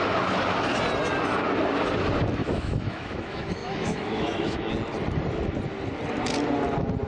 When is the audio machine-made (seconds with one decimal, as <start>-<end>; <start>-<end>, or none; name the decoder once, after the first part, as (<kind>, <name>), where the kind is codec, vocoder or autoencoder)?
2.4-4.7 (autoencoder, DAC-VAE)